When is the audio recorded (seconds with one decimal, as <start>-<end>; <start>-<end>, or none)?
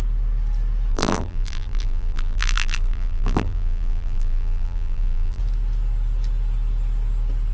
0.0-0.9; 5.4-7.5